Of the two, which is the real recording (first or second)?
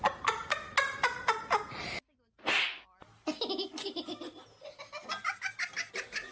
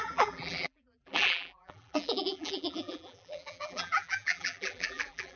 first